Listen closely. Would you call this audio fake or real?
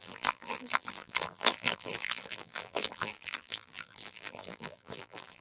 fake